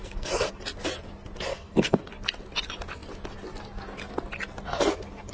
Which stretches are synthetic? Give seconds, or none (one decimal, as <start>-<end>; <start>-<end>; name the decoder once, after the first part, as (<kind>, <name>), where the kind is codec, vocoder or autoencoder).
0.0-0.5 (codec, SNAC); 1.5-2.0